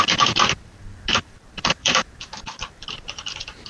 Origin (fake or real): fake